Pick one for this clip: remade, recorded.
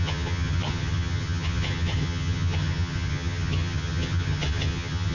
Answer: remade